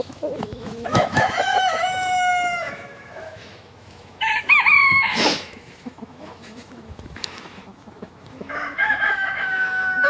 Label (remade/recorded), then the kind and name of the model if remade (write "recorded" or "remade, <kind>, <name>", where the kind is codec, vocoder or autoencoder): remade, autoencoder, DAC-VAE